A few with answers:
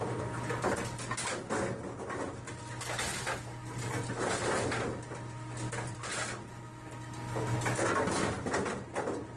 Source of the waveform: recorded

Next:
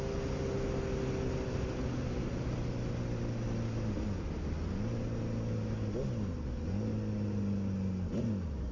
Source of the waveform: recorded